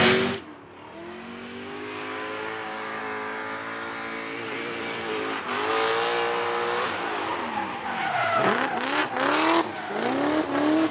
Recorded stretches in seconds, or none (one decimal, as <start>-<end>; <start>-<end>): 0.0-1.3; 3.0-10.9